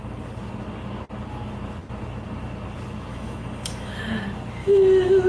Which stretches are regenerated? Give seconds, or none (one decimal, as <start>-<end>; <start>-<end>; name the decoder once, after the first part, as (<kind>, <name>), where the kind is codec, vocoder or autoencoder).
3.1-3.9 (autoencoder, DAC-VAE); 4.6-5.3